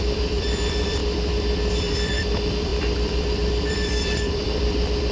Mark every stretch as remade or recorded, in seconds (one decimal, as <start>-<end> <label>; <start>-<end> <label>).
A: 0.0-1.0 remade; 1.0-1.7 recorded; 1.7-5.1 remade